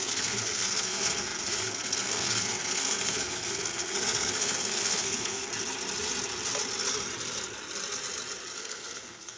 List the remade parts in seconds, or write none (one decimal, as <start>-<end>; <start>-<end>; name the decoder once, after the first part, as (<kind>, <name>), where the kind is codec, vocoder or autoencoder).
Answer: 0.0-5.5 (codec, SNAC); 8.6-9.4